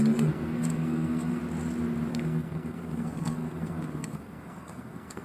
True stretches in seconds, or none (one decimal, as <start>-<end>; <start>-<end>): 1.4-2.1